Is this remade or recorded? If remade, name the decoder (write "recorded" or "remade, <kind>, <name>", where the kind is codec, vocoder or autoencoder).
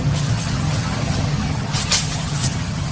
remade, vocoder, HiFi-GAN